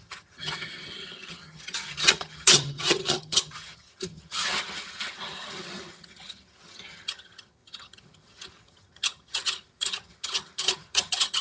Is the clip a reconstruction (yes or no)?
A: yes